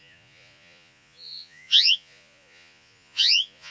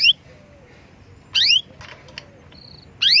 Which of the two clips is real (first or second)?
second